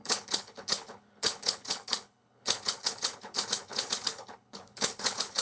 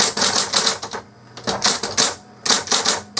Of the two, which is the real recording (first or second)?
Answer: second